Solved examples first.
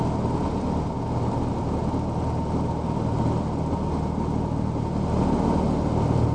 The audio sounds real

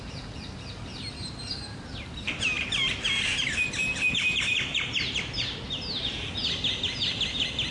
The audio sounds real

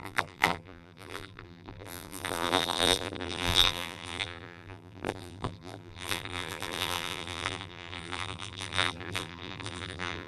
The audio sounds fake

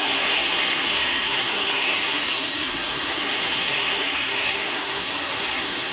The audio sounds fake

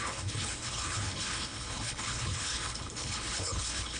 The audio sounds fake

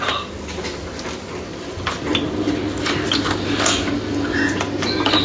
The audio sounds real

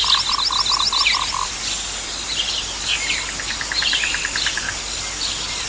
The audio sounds real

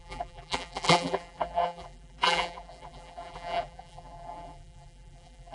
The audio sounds fake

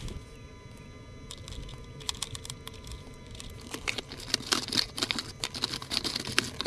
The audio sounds real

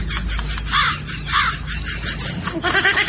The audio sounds real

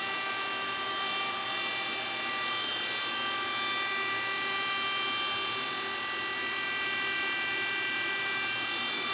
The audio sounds real